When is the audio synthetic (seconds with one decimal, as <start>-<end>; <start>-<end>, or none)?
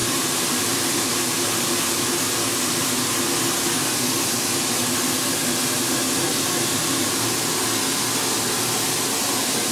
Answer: 0.0-1.6